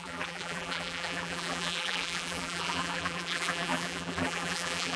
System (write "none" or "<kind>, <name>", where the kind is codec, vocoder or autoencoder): vocoder, BigVGAN v2